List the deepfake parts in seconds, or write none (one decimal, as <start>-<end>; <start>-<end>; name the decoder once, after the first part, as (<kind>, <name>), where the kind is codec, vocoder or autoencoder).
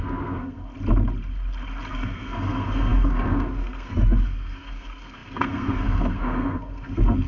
0.0-0.6 (codec, SNAC); 1.9-7.3